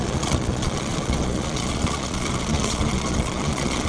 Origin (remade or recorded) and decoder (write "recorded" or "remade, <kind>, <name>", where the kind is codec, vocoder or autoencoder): remade, vocoder, Vocos